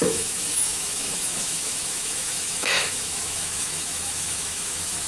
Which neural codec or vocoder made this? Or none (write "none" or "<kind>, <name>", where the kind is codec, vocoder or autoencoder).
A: autoencoder, DAC-VAE